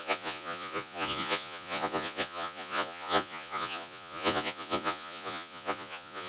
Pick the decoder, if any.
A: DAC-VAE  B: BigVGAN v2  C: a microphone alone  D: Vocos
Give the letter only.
D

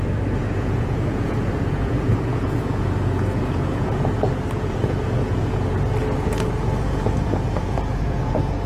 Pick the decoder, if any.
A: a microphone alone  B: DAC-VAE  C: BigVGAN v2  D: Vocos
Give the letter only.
D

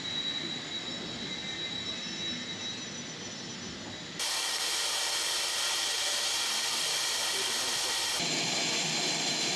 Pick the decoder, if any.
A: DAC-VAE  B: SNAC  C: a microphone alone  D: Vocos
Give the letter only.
C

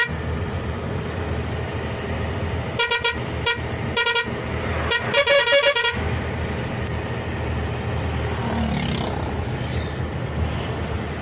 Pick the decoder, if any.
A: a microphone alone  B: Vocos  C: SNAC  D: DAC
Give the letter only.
A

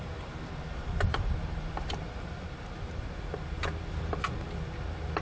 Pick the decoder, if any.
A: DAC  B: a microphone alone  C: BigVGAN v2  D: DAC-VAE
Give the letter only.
C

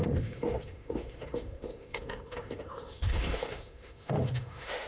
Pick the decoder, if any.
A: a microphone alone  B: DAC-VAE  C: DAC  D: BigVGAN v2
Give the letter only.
B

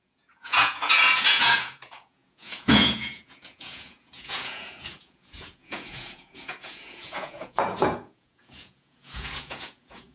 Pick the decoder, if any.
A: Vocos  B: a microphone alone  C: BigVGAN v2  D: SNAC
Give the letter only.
A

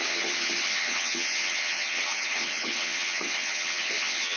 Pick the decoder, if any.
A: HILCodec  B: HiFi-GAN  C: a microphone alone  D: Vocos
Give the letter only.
B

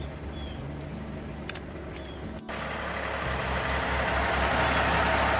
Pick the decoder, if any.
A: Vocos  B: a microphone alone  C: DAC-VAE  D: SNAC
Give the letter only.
B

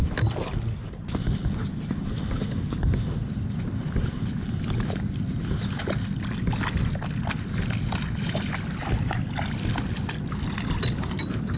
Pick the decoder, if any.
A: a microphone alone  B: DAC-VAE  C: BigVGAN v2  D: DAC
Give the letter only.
A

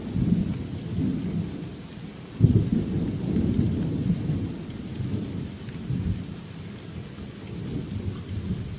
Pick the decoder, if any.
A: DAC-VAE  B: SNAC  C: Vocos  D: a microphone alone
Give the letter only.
D